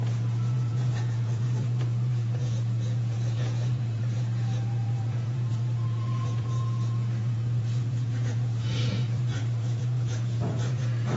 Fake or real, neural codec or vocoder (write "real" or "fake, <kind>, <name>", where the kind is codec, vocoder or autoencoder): fake, vocoder, Vocos